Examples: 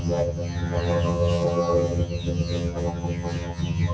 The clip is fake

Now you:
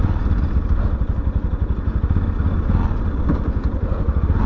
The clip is real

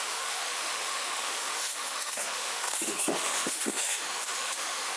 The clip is fake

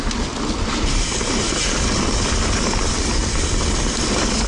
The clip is real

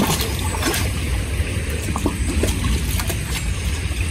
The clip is real